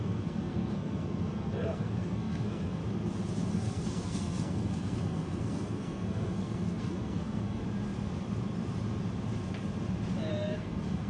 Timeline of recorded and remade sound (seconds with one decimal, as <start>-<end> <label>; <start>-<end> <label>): 0.0-2.8 remade; 2.8-3.5 recorded; 3.5-7.6 remade; 7.6-10.3 recorded; 10.3-11.1 remade